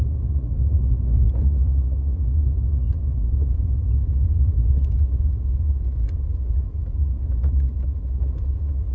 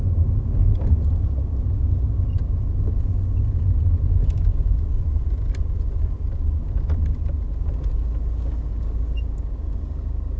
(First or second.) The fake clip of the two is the first